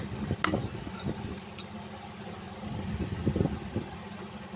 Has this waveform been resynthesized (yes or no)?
no